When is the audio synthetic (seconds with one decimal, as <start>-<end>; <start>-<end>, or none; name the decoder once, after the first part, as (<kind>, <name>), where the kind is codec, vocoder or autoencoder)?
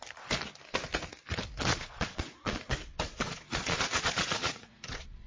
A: 1.7-5.3 (vocoder, Vocos)